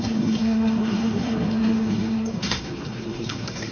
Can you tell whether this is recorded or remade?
remade